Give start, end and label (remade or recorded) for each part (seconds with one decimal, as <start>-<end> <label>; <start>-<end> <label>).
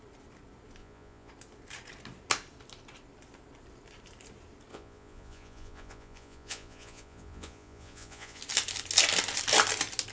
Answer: 0.0-0.8 recorded; 0.8-1.3 remade; 1.3-4.7 recorded; 4.7-8.4 remade; 8.4-10.1 recorded